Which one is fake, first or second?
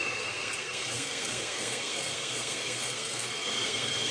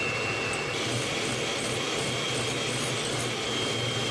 first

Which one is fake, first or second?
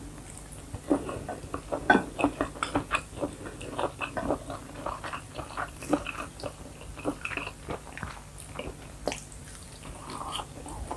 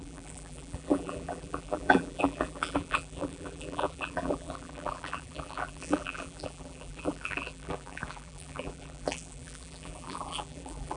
second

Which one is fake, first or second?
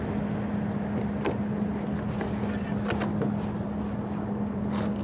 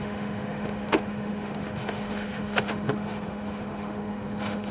second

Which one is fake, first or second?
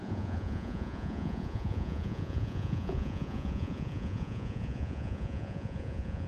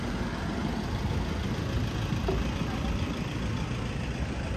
first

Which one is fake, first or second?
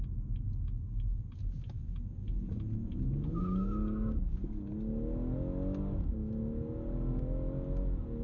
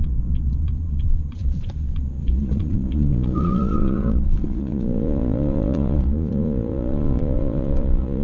second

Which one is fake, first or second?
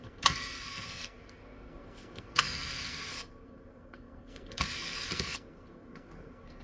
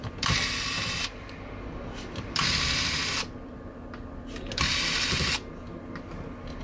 first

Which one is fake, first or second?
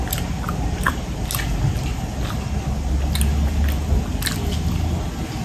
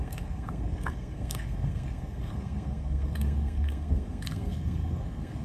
second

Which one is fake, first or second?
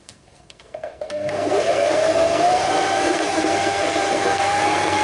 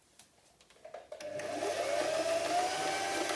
first